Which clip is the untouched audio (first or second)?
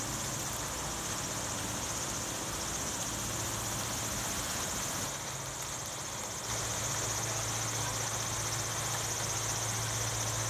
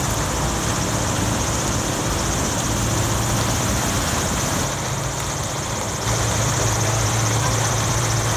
first